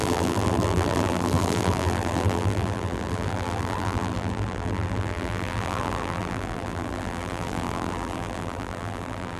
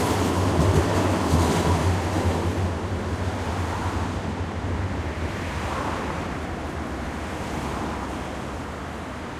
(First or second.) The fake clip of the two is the first